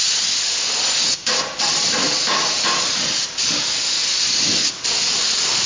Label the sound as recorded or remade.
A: recorded